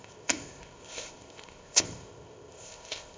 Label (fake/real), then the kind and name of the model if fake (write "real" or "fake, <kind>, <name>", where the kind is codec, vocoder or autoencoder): fake, codec, ZipCodec